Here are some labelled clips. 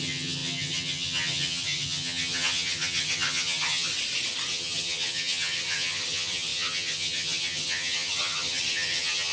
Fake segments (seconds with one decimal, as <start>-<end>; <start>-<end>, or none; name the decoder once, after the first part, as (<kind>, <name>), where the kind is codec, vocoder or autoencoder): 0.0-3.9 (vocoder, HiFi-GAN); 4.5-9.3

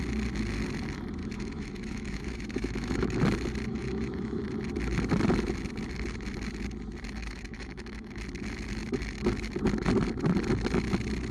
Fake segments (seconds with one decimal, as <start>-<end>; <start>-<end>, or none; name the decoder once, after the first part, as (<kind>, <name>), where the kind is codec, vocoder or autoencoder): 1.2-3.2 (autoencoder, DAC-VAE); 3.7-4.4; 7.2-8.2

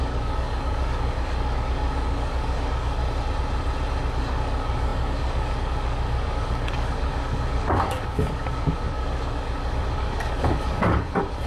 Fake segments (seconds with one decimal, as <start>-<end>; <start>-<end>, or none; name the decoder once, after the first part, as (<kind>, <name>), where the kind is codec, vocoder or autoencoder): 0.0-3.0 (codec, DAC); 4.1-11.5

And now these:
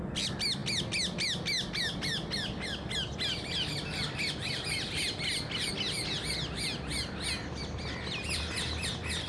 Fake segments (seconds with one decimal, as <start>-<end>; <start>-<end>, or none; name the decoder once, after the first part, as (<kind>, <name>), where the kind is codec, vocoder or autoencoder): none

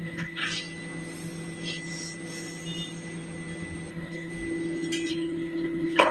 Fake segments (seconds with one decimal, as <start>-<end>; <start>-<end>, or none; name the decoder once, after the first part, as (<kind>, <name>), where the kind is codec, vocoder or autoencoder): 0.0-0.4 (codec, HILCodec); 3.9-4.3; 5.1-6.1

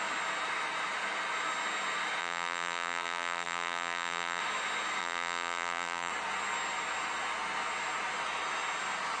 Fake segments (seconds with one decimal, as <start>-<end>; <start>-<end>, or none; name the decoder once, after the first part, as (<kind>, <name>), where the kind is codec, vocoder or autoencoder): 2.2-4.4 (vocoder, BigVGAN v2); 5.0-6.1